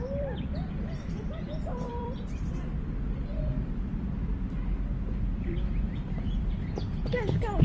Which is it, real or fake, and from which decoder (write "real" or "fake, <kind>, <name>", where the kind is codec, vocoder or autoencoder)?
fake, vocoder, BigVGAN v2